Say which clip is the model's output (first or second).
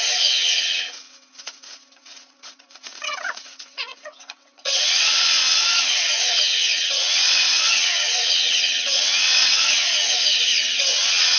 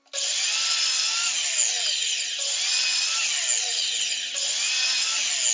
first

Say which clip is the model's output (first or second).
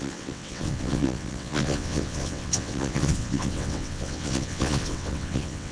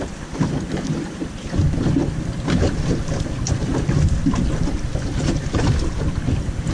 first